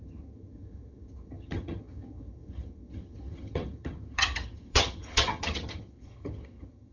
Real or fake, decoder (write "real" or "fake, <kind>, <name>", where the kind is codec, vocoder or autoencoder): fake, vocoder, HiFi-GAN